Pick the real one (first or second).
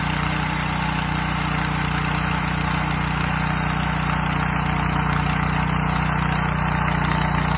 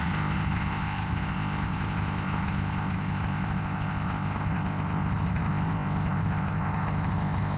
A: first